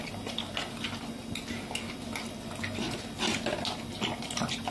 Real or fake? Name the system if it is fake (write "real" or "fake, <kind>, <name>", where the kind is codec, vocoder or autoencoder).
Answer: real